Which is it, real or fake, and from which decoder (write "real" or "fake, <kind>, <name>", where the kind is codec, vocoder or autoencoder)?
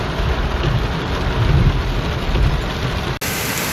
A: real